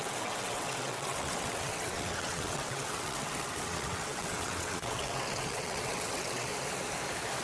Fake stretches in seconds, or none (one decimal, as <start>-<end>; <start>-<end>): 0.0-6.5